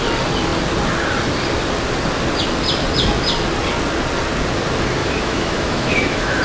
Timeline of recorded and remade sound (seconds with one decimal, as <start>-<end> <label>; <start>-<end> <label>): 0.0-5.0 recorded; 5.0-6.4 remade